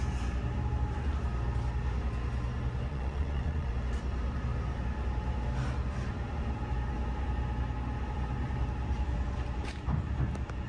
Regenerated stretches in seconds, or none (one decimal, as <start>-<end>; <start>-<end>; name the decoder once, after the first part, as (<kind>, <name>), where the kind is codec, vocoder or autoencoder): 2.9-3.7 (vocoder, Vocos)